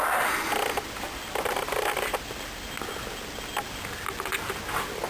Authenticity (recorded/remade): recorded